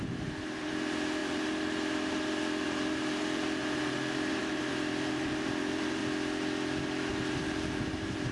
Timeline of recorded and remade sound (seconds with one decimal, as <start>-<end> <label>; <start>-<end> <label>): 0.0-6.0 remade; 6.0-7.1 recorded; 7.1-8.3 remade